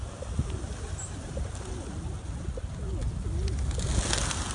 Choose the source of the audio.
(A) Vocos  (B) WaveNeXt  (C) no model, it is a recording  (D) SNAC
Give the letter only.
C